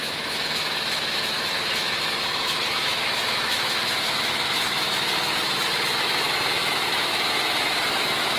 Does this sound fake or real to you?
fake